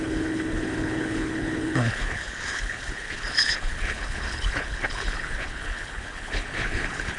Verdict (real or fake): fake